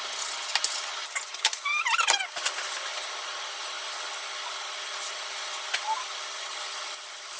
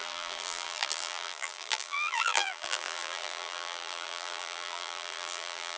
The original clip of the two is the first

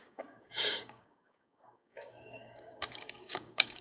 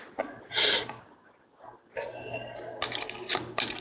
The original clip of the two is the second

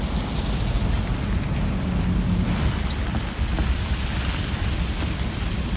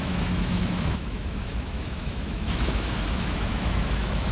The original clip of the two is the first